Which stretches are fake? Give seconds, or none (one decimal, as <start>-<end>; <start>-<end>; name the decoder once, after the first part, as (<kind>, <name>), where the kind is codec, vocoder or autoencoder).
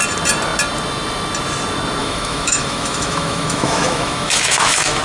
2.0-5.0 (autoencoder, DAC-VAE)